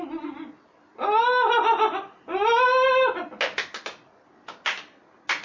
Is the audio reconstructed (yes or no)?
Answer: no